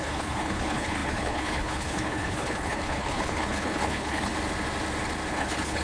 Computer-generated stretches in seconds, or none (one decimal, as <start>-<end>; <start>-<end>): 0.0-4.3; 5.3-5.8